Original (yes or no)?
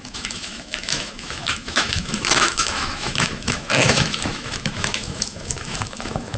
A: no